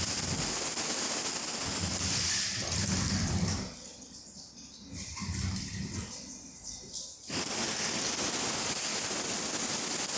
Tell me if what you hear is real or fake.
real